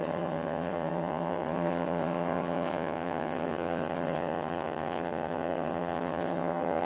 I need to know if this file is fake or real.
fake